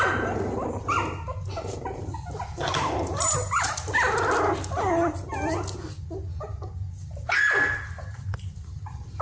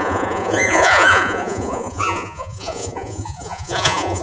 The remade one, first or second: second